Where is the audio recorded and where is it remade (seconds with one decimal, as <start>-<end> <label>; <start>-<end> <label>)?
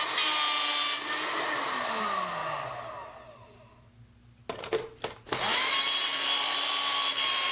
0.0-7.5 recorded